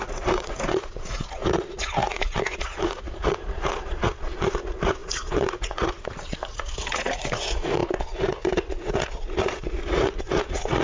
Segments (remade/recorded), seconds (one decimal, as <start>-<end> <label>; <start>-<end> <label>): 0.0-10.8 remade